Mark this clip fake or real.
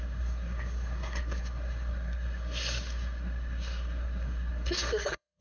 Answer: fake